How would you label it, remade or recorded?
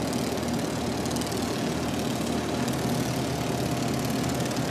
recorded